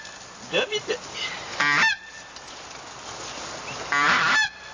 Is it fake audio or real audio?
real